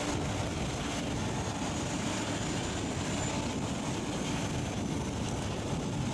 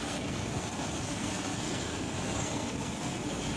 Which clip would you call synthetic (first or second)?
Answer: second